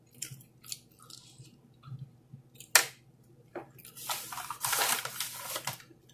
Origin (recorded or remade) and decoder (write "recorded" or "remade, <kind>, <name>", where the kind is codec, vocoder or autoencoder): recorded